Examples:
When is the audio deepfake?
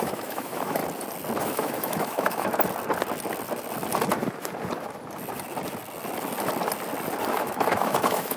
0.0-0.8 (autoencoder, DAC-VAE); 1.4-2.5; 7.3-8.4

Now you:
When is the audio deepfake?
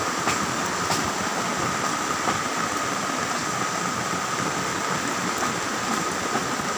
none